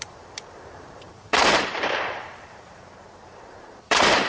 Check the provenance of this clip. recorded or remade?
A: remade